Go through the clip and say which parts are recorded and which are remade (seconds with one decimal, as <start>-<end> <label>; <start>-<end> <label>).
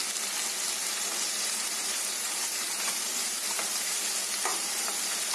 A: 0.0-0.8 recorded; 0.8-4.0 remade; 4.0-4.5 recorded; 4.5-5.3 remade